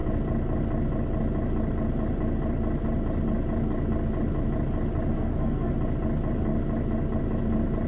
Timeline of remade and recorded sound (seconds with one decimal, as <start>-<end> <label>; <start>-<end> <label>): 0.0-5.1 recorded; 5.1-5.7 remade; 5.7-7.9 recorded